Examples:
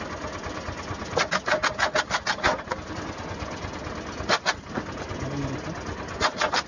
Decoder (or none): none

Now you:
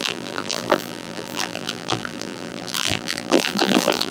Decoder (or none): vocoder, BigVGAN v2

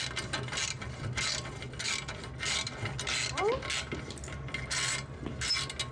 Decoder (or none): none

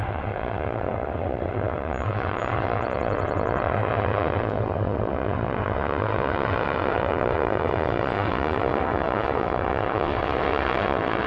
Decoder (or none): vocoder, WaveNeXt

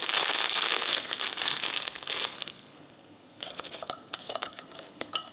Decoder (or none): codec, SNAC